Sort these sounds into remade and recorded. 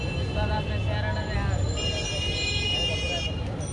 recorded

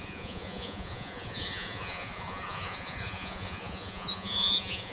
remade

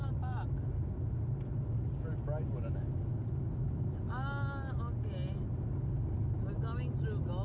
recorded